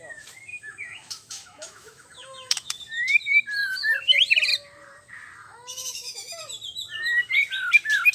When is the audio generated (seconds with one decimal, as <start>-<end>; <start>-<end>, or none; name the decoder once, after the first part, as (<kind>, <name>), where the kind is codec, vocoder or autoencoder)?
0.5-2.8 (autoencoder, DAC-VAE); 5.4-6.4